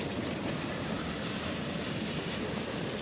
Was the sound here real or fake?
fake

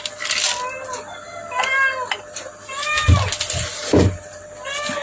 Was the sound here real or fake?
real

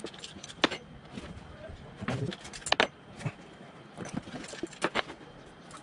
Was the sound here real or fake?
real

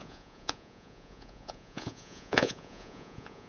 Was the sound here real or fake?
fake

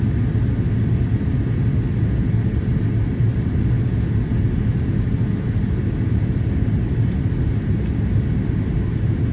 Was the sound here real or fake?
real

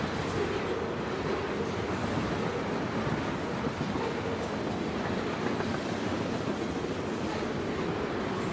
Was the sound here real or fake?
real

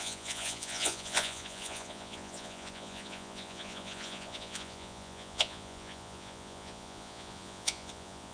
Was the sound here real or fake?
fake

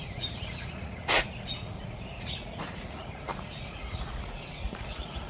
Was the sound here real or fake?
fake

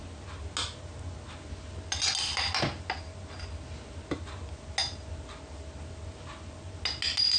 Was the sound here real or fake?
real